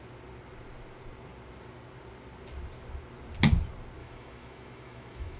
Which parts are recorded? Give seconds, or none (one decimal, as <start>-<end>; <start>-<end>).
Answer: 0.0-4.0

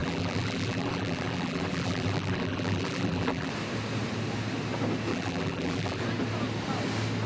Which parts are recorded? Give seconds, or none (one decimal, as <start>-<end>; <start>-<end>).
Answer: 3.5-5.1; 6.0-7.3

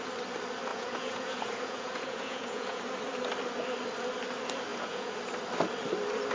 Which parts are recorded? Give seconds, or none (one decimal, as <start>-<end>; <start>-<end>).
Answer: 0.0-0.7; 2.8-4.7; 5.2-6.3

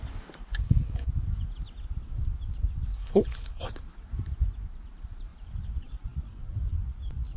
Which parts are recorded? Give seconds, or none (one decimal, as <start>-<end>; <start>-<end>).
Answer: 0.0-0.6; 1.1-2.9; 3.6-7.4